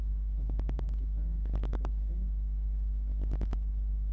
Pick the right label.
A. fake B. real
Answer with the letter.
A